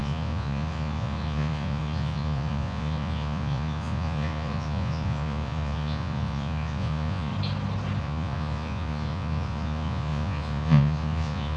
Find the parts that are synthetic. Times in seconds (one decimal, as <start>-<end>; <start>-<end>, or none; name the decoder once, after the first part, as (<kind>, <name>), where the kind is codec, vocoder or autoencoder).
0.0-7.3 (vocoder, Vocos); 8.0-11.6